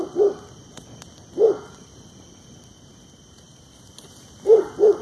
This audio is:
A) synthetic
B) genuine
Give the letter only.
B